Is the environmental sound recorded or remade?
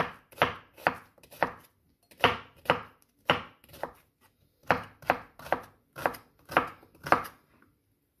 recorded